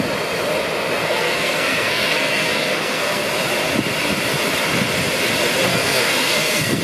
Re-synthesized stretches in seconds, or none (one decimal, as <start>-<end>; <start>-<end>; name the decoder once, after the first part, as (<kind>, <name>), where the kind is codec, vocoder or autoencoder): 1.0-3.3 (codec, SNAC); 5.7-6.8